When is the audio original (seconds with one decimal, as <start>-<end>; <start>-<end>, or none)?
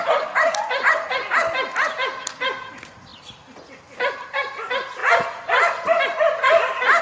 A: 0.0-7.0